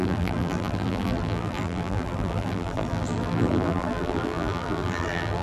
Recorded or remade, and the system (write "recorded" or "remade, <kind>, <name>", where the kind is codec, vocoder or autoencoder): remade, vocoder, BigVGAN v2